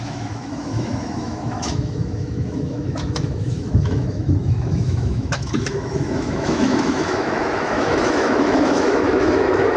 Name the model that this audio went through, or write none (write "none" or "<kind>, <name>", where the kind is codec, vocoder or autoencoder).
autoencoder, DAC-VAE